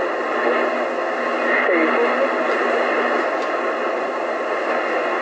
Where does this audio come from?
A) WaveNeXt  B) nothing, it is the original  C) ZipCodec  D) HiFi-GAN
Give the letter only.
B